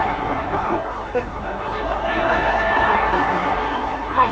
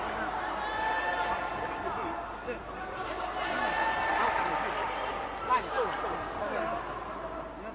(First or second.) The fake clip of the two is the first